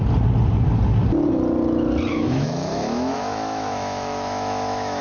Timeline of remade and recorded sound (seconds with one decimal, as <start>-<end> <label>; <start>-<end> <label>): 0.0-2.1 recorded; 2.1-5.0 remade